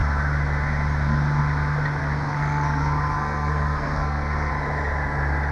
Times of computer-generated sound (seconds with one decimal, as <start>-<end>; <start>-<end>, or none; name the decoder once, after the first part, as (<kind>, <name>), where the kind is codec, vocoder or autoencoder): 2.0-4.5 (codec, SNAC)